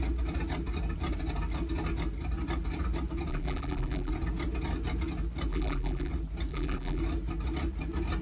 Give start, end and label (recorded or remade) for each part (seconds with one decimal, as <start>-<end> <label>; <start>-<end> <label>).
0.0-3.3 recorded; 3.3-4.1 remade; 4.1-5.5 recorded; 5.5-6.1 remade; 6.1-6.5 recorded; 6.5-7.0 remade; 7.0-8.2 recorded